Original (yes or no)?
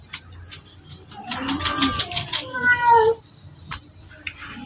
yes